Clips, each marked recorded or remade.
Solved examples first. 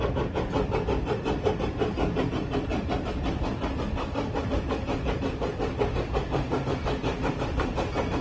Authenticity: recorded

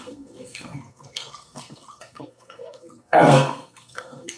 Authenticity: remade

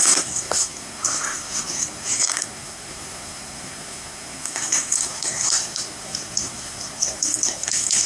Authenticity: remade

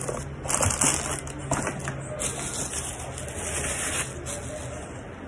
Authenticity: recorded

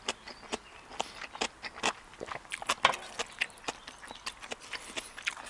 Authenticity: recorded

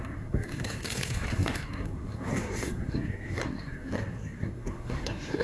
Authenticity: remade